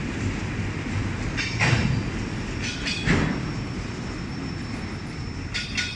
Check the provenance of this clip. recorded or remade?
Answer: recorded